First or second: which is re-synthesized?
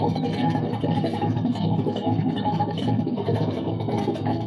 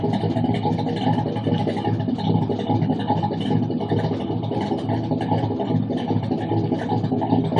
first